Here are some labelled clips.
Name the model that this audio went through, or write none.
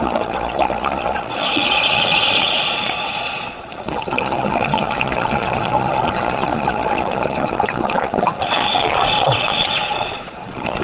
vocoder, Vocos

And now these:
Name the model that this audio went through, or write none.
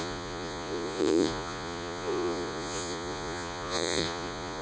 vocoder, Vocos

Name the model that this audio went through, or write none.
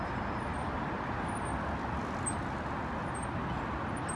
none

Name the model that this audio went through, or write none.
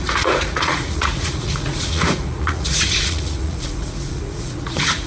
vocoder, Vocos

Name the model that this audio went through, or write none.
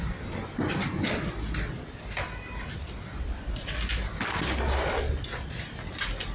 none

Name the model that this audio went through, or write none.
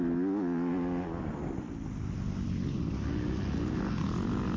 none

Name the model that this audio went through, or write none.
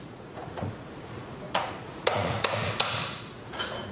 vocoder, Vocos